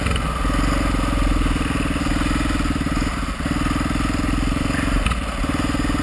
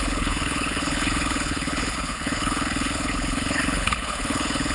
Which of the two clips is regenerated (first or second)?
second